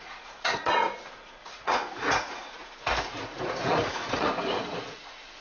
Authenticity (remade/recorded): remade